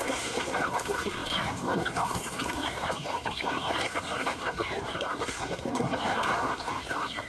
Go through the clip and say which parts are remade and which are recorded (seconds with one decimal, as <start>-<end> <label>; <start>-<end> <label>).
0.0-7.3 remade